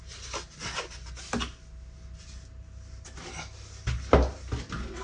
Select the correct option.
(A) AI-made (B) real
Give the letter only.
B